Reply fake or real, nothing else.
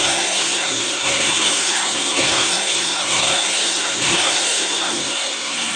fake